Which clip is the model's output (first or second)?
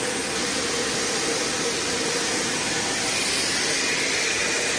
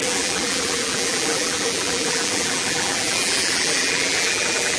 second